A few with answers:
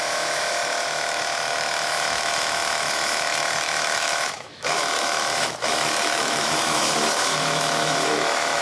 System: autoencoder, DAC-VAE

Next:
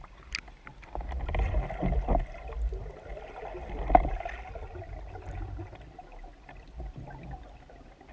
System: none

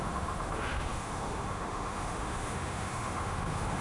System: autoencoder, DAC-VAE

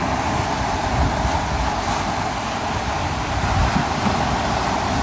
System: none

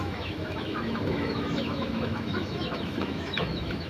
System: autoencoder, DAC-VAE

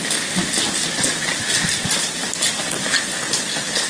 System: none